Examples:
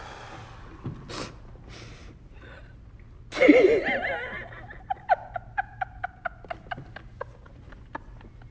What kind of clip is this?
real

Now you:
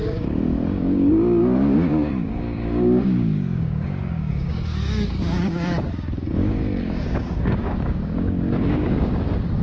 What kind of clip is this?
fake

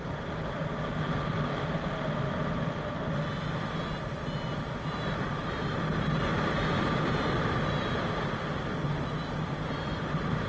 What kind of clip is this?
real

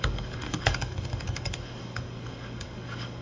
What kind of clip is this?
fake